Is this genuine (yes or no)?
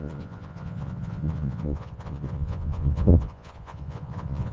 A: no